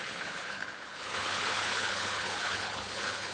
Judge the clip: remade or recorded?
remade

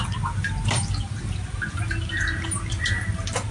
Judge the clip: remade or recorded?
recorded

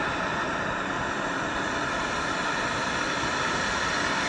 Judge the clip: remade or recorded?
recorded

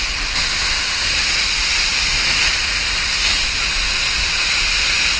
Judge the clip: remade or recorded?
recorded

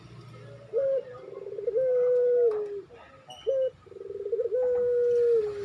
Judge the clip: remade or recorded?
recorded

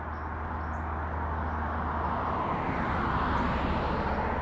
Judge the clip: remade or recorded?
recorded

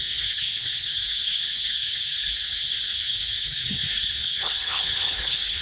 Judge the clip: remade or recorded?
remade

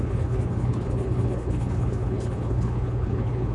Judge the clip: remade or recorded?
remade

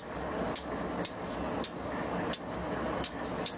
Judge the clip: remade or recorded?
recorded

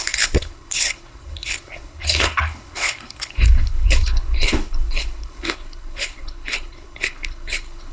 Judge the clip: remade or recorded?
remade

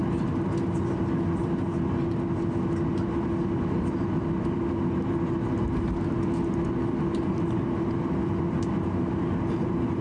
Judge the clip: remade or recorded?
recorded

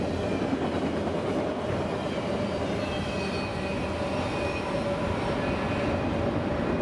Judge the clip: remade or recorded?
recorded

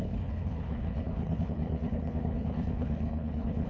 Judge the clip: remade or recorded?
remade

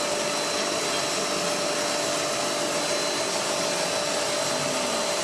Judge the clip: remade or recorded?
recorded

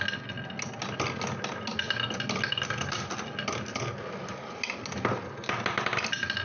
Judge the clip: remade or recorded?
recorded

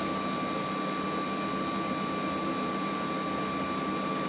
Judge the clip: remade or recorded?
recorded